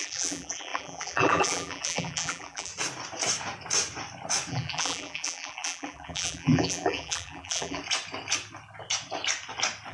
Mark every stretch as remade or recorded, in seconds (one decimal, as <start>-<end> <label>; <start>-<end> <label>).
0.0-2.7 remade; 2.7-4.5 recorded; 4.5-7.8 remade; 7.8-9.9 recorded